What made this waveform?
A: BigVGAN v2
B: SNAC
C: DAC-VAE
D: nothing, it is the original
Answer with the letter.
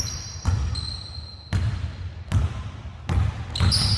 D